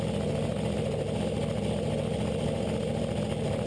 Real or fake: real